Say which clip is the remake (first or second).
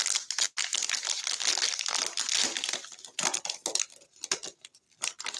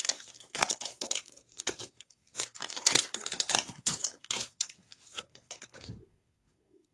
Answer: second